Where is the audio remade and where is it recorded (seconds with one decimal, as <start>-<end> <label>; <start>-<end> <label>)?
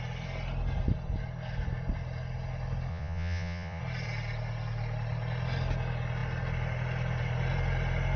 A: 0.0-2.9 recorded; 2.9-3.8 remade; 3.8-8.2 recorded